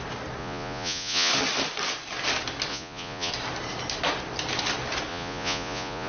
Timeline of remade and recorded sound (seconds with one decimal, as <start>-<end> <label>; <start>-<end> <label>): 0.0-0.4 recorded; 0.4-1.3 remade; 1.3-2.7 recorded; 2.7-3.3 remade; 3.3-5.1 recorded; 5.1-6.1 remade